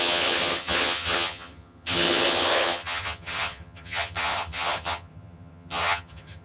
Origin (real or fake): fake